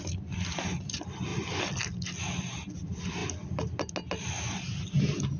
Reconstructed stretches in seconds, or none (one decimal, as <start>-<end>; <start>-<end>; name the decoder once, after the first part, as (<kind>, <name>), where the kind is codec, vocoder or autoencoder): none